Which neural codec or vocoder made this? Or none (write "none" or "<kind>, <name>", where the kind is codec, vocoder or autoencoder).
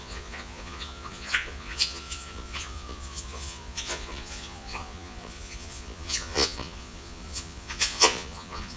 vocoder, Vocos